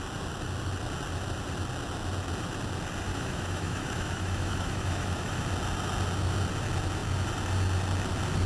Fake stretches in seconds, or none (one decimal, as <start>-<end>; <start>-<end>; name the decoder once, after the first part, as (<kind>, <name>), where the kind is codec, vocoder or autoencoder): 3.1-5.4 (autoencoder, DAC-VAE)